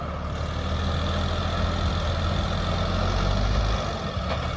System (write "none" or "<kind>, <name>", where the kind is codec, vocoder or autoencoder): none